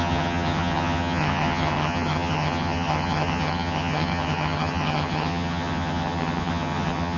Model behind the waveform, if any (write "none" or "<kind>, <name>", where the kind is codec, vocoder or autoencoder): vocoder, HiFi-GAN